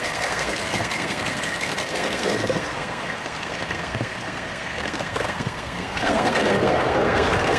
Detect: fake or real fake